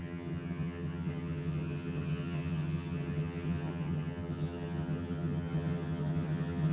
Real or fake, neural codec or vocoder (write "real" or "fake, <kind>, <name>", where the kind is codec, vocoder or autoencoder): fake, vocoder, HiFi-GAN